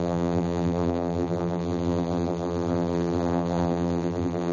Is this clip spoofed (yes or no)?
yes